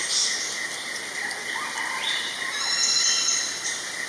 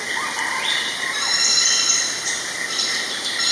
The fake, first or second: second